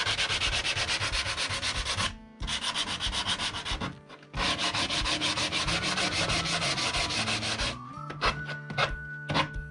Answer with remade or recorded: recorded